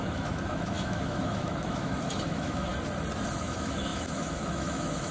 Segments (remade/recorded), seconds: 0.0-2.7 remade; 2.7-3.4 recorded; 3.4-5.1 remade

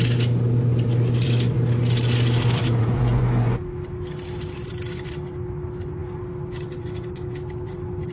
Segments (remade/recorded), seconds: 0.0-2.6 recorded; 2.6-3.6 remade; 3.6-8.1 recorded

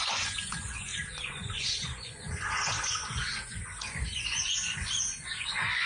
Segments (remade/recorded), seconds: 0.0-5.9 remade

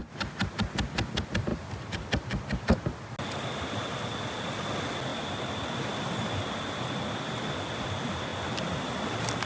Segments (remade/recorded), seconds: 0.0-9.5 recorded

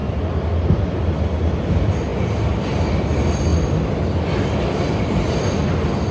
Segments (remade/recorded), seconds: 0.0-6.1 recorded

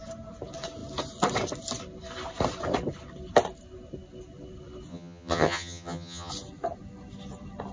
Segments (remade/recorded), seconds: 0.0-4.9 recorded; 4.9-6.3 remade; 6.3-7.7 recorded

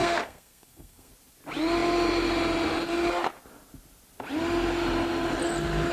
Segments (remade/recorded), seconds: 0.0-1.1 remade; 1.1-5.9 recorded

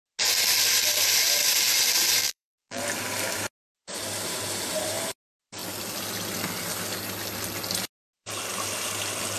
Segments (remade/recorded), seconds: 0.0-2.2 recorded; 2.2-2.8 remade; 2.8-9.4 recorded